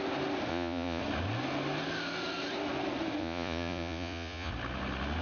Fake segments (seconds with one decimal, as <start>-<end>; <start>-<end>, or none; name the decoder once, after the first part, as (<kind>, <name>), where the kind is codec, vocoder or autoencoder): 0.5-1.0 (vocoder, Vocos); 3.2-4.5